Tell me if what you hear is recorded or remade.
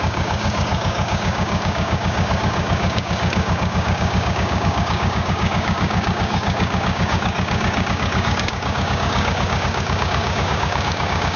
remade